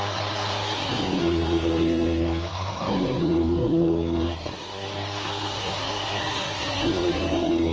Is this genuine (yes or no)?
no